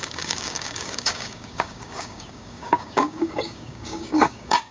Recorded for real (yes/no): no